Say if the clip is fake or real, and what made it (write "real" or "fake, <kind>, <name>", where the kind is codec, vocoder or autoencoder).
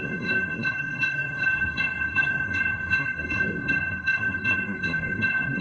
fake, codec, SNAC